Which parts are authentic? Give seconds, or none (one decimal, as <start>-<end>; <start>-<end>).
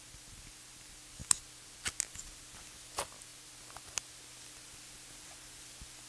0.0-6.1